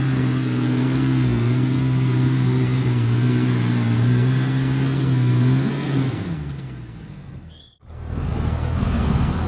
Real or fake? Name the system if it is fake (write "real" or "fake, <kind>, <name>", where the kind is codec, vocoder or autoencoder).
fake, codec, SNAC